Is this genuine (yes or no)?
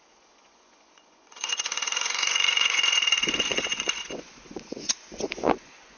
no